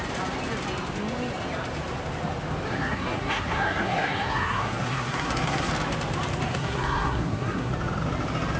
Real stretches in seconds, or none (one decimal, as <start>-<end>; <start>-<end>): 0.0-2.7; 5.7-6.5; 7.7-8.6